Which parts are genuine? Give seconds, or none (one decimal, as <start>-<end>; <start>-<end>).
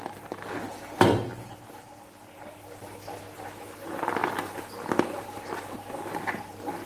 0.0-6.9